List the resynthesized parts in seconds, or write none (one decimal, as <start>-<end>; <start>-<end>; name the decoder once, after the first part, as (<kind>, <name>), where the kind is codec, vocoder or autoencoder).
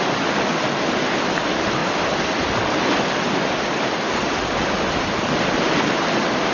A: none